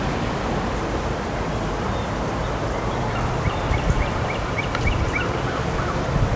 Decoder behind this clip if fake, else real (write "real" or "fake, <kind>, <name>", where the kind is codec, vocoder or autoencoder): real